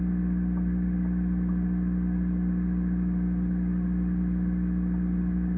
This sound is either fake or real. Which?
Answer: real